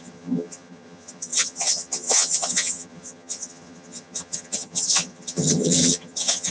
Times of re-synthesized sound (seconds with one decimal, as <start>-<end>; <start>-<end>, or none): 0.0-6.5